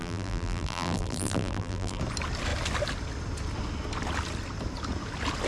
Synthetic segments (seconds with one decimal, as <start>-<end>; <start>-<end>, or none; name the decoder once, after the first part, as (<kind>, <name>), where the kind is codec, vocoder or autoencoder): 0.0-2.0 (vocoder, BigVGAN v2)

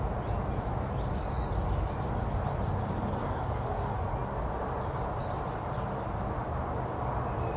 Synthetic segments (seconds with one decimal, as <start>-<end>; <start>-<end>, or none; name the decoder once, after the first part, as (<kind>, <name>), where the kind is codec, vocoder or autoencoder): 3.2-3.9 (codec, DAC)

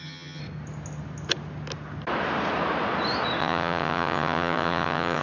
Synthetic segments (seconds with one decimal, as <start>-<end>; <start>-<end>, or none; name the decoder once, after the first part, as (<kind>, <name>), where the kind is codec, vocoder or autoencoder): 0.0-0.4 (vocoder, HiFi-GAN); 3.4-5.2

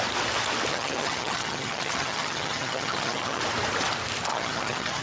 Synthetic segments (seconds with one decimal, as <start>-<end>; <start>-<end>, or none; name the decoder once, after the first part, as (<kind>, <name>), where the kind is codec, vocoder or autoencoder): 0.7-3.4 (vocoder, HiFi-GAN); 4.3-5.0

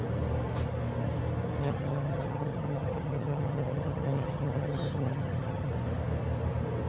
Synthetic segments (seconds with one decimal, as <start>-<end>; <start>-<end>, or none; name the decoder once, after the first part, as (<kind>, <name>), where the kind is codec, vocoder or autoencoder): 1.6-5.7 (vocoder, HiFi-GAN)

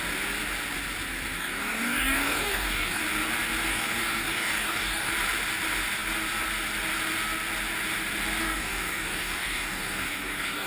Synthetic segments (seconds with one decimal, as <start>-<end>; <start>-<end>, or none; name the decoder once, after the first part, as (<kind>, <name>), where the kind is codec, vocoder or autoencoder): 1.4-3.0 (codec, DAC); 3.7-5.1; 8.4-10.7